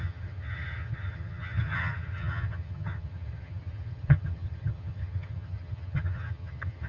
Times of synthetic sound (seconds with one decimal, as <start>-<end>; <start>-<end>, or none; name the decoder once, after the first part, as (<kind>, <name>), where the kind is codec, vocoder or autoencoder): 0.0-6.9 (vocoder, HiFi-GAN)